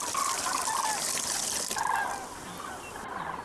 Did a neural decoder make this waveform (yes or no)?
no